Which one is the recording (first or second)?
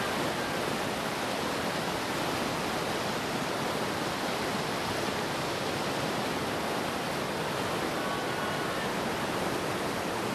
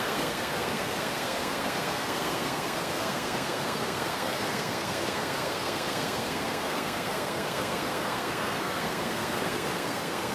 first